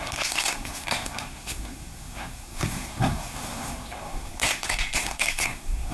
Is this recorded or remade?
remade